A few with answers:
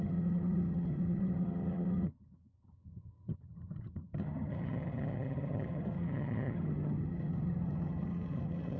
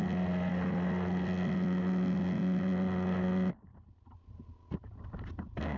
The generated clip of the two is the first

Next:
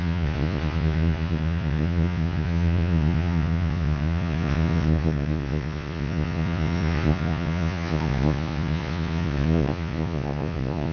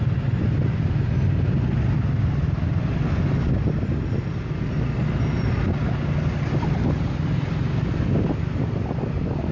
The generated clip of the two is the first